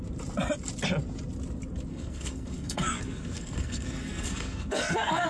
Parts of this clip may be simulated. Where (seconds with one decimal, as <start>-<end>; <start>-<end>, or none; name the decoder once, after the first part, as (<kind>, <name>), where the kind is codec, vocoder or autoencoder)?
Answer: 1.9-5.3 (codec, SNAC)

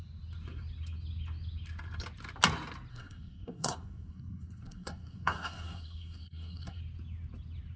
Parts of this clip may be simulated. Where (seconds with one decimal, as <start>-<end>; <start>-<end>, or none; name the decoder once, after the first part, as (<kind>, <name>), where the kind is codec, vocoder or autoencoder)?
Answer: 2.9-6.8 (codec, SNAC)

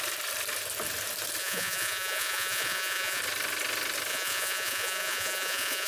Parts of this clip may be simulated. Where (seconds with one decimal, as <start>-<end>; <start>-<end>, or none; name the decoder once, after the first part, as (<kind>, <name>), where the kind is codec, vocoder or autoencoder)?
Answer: 1.4-3.2 (vocoder, Vocos); 4.1-5.9

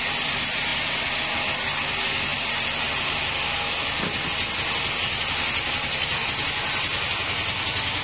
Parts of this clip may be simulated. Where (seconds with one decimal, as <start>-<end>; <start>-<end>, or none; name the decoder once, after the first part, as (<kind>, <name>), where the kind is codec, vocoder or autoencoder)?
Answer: none

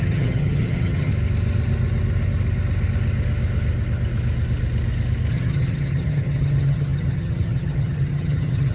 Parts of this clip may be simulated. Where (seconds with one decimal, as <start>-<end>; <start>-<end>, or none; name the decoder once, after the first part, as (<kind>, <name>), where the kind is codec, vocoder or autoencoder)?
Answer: 0.0-1.1 (vocoder, HiFi-GAN); 5.3-8.7